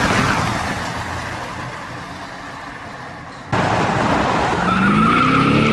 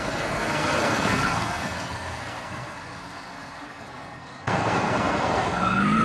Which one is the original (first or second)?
first